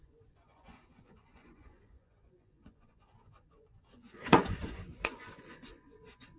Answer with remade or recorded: remade